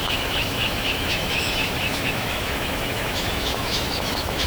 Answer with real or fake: fake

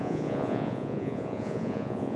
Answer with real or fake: fake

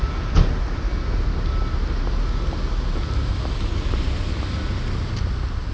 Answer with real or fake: real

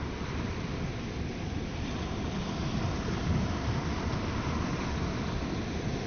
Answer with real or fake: real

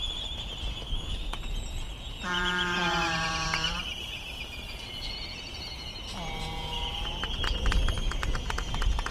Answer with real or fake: fake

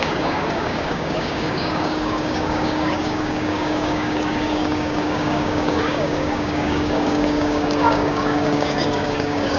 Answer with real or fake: fake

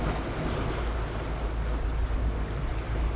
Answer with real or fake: real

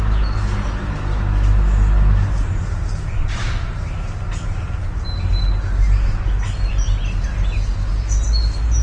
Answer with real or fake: real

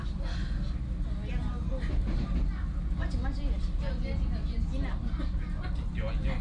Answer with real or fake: real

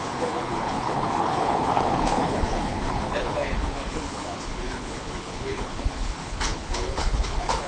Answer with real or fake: fake